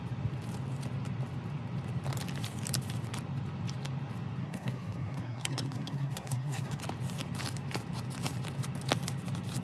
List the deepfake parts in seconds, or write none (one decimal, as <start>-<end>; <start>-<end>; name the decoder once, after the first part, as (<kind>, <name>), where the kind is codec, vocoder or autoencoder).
4.4-6.8 (codec, SNAC)